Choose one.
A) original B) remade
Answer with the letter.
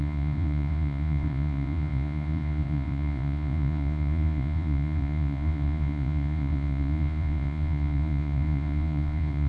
B